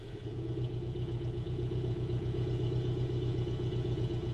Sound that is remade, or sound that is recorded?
remade